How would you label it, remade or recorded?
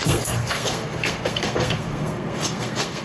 remade